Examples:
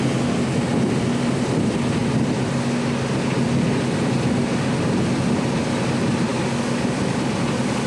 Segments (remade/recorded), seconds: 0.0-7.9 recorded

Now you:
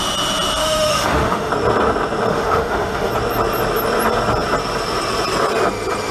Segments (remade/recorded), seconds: 0.0-0.6 recorded; 0.6-1.5 remade; 1.5-2.3 recorded; 2.3-3.1 remade; 3.1-6.1 recorded

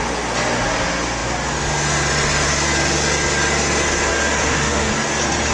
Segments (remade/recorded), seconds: 0.0-4.4 recorded; 4.4-4.9 remade; 4.9-5.5 recorded

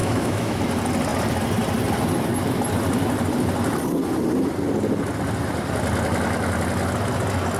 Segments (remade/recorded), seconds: 0.0-0.6 remade; 0.6-7.6 recorded

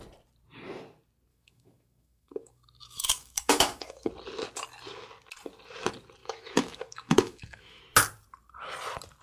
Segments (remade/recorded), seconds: 0.0-1.3 recorded; 1.3-4.1 remade; 4.1-6.2 recorded; 6.2-7.8 remade; 7.8-9.2 recorded

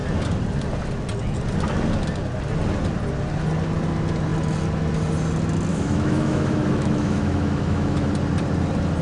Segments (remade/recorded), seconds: 0.0-5.7 recorded; 5.7-8.1 remade; 8.1-9.0 recorded

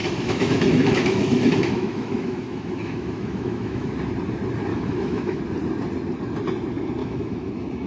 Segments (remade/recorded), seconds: 0.0-3.9 remade; 3.9-4.7 recorded; 4.7-5.4 remade; 5.4-7.0 recorded; 7.0-7.5 remade; 7.5-7.9 recorded